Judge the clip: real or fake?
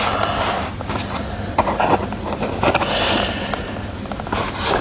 real